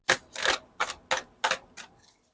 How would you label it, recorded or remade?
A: recorded